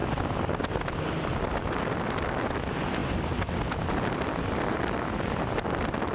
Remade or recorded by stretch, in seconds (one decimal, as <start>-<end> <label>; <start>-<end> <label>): 0.0-6.1 recorded